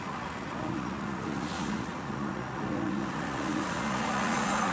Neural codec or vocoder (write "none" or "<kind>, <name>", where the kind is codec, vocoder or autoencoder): vocoder, Vocos